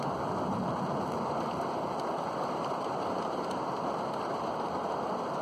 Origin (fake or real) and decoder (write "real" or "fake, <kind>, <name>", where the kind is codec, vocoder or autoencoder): real